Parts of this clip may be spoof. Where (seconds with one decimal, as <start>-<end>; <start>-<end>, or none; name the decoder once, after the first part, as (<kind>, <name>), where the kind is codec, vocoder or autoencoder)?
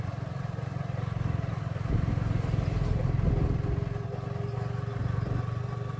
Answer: 5.0-5.6 (vocoder, BigVGAN v2)